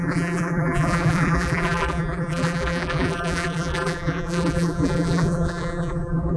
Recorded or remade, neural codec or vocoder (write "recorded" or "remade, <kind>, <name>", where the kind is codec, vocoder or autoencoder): remade, vocoder, BigVGAN v2